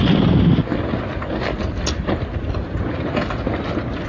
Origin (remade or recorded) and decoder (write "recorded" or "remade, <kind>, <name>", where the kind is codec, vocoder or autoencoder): recorded